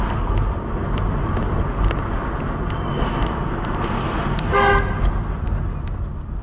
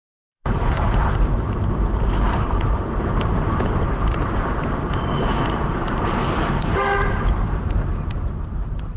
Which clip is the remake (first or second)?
second